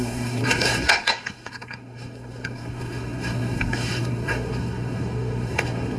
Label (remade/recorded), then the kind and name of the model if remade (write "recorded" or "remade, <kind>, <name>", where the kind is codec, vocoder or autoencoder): remade, codec, SNAC